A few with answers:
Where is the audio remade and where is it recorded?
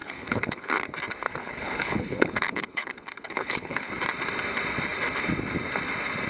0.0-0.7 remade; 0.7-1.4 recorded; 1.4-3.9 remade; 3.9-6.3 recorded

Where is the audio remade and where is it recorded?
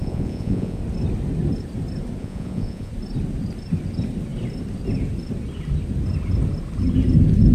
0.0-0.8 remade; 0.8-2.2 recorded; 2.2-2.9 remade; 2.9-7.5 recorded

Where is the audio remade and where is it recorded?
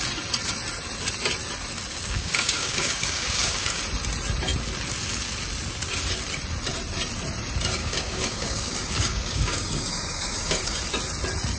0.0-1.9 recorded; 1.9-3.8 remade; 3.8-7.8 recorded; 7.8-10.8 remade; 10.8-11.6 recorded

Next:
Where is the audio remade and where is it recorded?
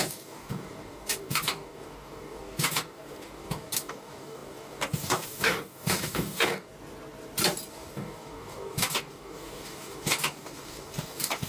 0.0-6.7 remade; 6.7-7.7 recorded; 7.7-11.5 remade